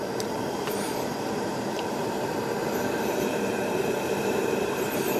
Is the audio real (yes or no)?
no